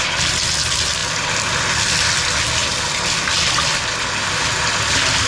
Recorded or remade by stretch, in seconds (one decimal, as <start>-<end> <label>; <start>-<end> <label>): 0.0-5.3 recorded